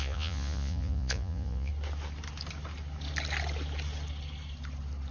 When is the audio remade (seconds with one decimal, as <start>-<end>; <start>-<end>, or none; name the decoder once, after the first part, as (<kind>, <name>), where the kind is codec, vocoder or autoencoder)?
0.0-1.7 (vocoder, Vocos)